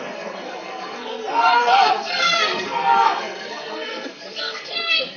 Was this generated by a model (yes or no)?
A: yes